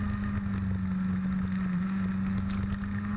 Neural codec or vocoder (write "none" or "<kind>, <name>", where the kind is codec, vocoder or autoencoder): none